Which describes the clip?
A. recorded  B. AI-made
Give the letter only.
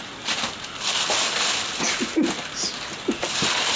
A